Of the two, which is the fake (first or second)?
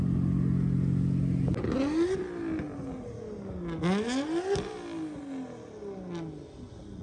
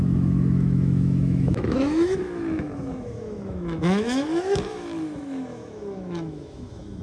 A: second